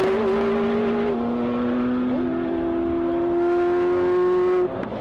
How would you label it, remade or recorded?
recorded